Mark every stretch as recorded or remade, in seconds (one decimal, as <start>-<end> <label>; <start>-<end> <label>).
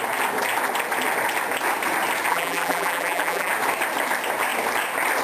0.0-2.3 recorded; 2.3-3.5 remade; 3.5-5.2 recorded